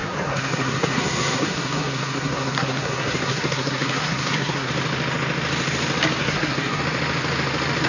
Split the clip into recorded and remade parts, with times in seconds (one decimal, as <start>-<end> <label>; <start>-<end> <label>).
0.0-4.7 remade; 4.7-6.2 recorded; 6.2-6.8 remade; 6.8-7.9 recorded